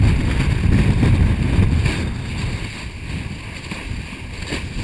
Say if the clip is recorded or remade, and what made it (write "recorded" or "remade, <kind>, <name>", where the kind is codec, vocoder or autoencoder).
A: recorded